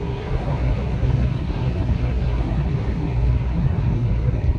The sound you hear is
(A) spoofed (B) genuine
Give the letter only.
A